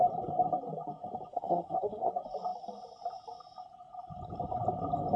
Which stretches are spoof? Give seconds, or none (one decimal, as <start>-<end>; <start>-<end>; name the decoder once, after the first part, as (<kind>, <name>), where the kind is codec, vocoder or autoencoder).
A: 1.3-2.1 (codec, SNAC)